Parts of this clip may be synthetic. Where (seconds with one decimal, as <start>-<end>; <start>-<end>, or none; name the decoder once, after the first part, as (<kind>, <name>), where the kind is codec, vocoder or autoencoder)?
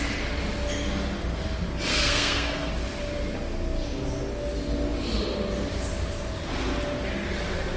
1.9-2.7 (codec, SNAC)